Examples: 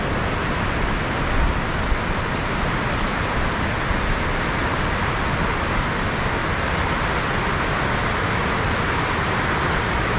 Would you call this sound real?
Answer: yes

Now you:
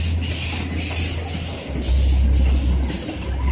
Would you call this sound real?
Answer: yes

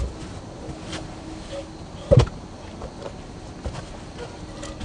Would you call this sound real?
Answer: yes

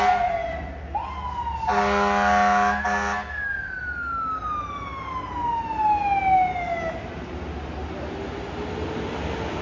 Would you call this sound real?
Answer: yes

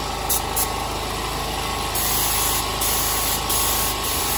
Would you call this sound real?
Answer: yes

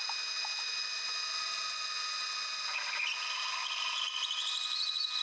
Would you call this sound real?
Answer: yes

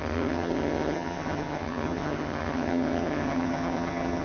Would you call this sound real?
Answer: no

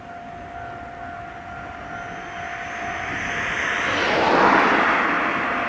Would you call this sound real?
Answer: yes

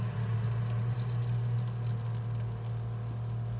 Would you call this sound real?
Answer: yes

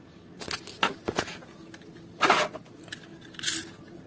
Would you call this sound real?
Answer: yes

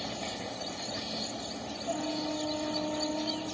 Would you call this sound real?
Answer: yes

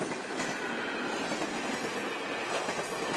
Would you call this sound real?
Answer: yes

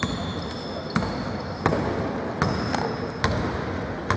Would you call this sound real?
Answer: yes